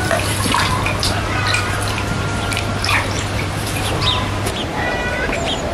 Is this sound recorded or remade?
remade